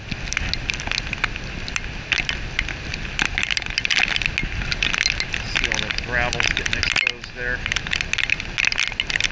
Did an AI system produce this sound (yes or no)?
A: no